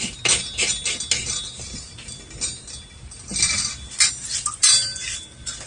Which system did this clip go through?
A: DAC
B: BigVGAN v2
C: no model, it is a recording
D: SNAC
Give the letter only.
C